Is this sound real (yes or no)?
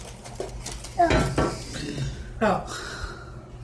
yes